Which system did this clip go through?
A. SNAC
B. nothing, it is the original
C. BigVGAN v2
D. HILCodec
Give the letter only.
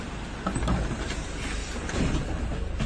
B